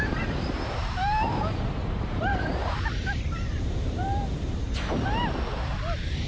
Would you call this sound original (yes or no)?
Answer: no